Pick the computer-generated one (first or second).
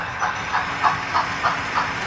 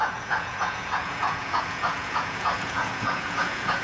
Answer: second